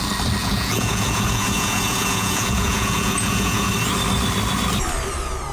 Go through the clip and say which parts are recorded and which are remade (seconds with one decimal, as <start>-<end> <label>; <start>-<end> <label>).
0.0-0.4 recorded; 0.4-3.7 remade; 3.7-5.5 recorded